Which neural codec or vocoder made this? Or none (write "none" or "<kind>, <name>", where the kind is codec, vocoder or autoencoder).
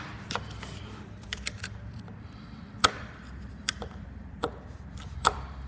vocoder, BigVGAN v2